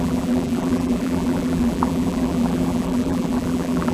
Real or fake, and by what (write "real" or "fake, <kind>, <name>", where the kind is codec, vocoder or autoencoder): fake, vocoder, BigVGAN v2